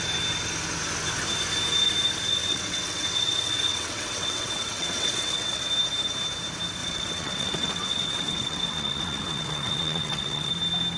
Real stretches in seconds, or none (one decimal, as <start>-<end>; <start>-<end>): 0.0-2.4; 5.6-6.8; 10.5-11.0